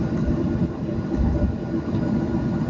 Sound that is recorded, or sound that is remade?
recorded